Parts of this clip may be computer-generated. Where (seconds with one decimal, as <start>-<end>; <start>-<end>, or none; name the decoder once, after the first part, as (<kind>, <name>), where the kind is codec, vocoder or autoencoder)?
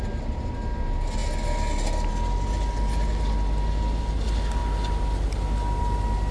none